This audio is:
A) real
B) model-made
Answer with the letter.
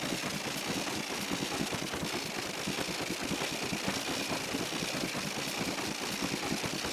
A